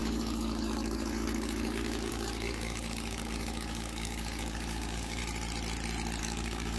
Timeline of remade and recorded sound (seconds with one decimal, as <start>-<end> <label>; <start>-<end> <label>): 0.0-5.2 remade; 5.2-6.2 recorded; 6.2-6.8 remade